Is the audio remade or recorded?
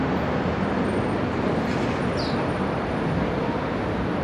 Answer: recorded